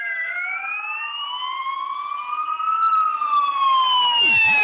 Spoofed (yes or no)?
no